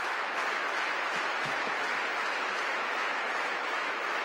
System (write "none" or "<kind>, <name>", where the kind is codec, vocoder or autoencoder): autoencoder, DAC-VAE